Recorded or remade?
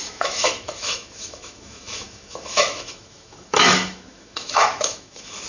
remade